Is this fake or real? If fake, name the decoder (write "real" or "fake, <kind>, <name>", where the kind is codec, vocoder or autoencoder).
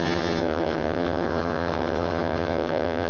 fake, vocoder, HiFi-GAN